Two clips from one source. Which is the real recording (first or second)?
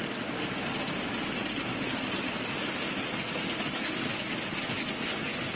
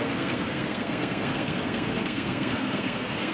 first